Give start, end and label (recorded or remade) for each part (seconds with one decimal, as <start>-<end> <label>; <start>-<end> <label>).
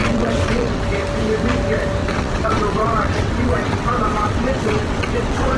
0.0-0.8 remade; 0.8-2.0 recorded; 2.0-5.6 remade